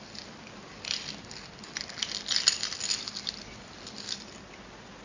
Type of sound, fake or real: real